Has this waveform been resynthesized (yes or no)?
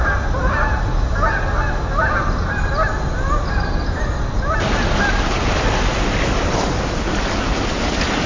no